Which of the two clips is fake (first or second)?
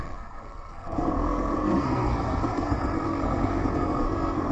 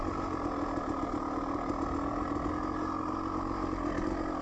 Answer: first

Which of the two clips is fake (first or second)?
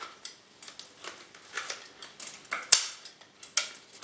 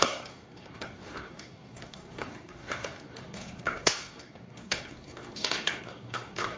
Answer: second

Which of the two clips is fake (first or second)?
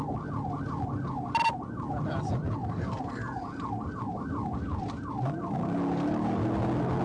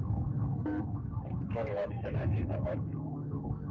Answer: second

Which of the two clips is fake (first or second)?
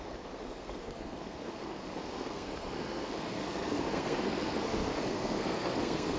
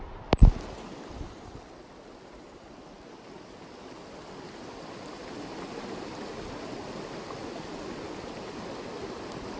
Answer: first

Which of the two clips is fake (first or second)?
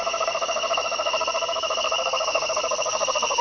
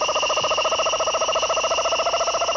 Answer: first